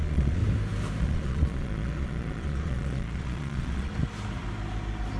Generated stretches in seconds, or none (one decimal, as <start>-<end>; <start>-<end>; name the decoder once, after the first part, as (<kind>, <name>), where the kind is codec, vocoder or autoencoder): 0.0-0.4 (vocoder, Vocos); 1.0-3.9